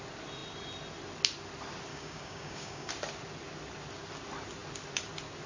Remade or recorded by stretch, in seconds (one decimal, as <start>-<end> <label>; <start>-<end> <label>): 0.0-1.9 recorded; 1.9-2.9 remade; 2.9-5.5 recorded